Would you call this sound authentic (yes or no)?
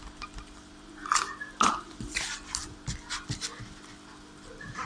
yes